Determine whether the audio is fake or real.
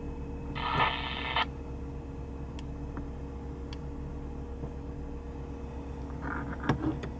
real